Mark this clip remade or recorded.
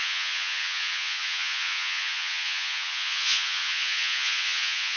remade